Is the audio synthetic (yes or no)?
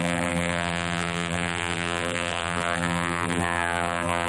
yes